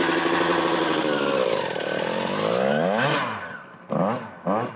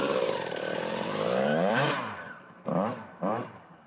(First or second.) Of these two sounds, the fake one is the second